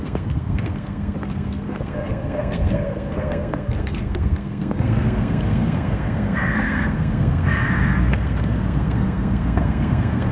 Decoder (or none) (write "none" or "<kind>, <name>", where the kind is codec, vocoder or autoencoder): codec, SNAC